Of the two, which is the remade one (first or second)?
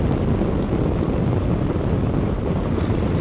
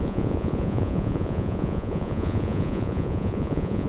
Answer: second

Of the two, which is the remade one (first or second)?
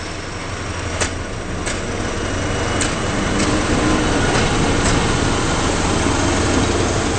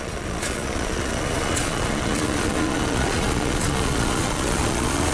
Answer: second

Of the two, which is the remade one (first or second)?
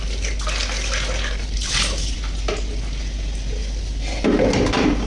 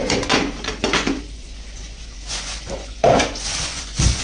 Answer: second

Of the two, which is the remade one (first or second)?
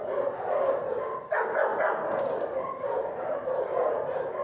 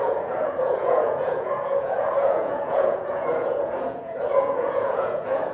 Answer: second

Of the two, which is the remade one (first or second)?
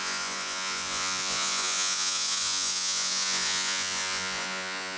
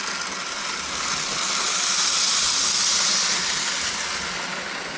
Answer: first